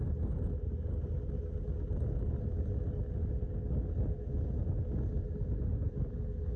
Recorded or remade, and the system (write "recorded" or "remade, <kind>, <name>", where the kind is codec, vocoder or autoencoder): recorded